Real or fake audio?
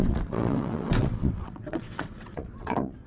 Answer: fake